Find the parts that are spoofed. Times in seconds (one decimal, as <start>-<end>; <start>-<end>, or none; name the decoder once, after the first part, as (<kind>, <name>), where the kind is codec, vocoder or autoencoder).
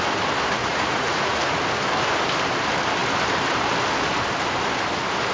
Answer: 0.6-1.6 (vocoder, Vocos)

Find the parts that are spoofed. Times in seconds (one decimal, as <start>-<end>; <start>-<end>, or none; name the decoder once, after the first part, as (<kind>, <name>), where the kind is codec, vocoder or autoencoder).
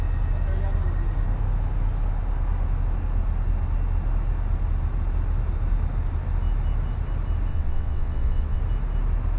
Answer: 7.5-8.6 (vocoder, WaveNeXt)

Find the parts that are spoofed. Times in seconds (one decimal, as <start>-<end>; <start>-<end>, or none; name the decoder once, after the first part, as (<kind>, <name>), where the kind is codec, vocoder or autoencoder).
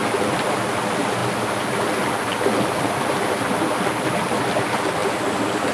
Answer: none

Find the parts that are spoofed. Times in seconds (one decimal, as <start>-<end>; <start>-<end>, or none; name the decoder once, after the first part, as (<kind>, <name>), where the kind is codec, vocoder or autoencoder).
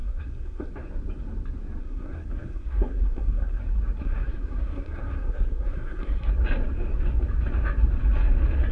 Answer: 0.0-0.7 (codec, SNAC); 1.8-3.6; 4.0-6.3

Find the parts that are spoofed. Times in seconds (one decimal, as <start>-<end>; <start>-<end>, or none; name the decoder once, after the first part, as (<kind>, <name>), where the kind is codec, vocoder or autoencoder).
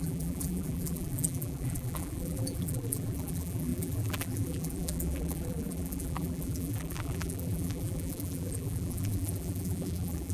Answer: 0.0-10.3 (vocoder, BigVGAN v2)